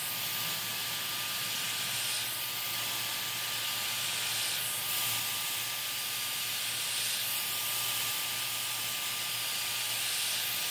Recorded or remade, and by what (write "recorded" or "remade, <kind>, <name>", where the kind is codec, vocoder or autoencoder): recorded